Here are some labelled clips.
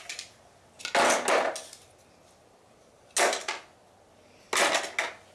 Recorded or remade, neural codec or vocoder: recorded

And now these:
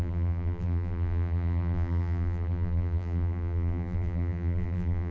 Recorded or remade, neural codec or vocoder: remade, vocoder, BigVGAN v2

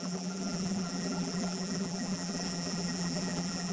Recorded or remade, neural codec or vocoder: remade, vocoder, BigVGAN v2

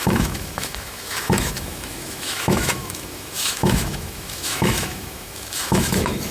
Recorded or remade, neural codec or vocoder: remade, autoencoder, DAC-VAE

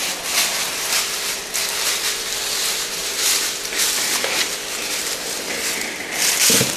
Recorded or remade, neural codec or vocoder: remade, vocoder, BigVGAN v2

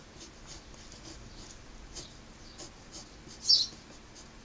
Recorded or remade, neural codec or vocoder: recorded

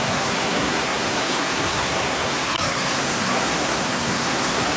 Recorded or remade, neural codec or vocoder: remade, codec, SNAC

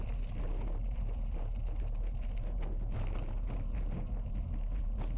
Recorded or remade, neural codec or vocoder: recorded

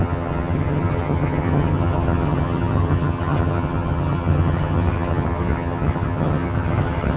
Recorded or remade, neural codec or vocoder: remade, vocoder, HiFi-GAN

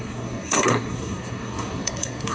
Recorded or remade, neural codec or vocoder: remade, codec, SNAC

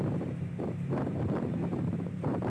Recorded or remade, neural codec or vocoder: remade, vocoder, BigVGAN v2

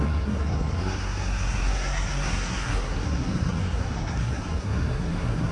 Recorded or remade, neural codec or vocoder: remade, codec, SNAC